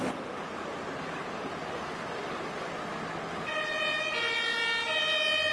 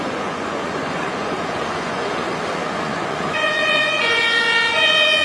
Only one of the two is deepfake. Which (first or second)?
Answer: second